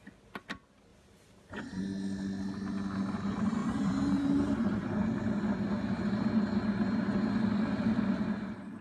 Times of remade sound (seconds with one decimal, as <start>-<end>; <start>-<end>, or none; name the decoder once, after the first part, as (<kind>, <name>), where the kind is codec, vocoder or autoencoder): 0.9-1.8 (vocoder, BigVGAN v2); 3.6-5.0